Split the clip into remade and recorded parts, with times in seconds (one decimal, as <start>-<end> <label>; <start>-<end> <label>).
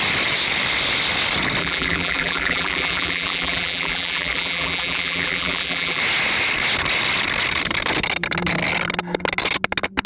0.0-1.6 recorded; 1.6-6.0 remade; 6.0-10.1 recorded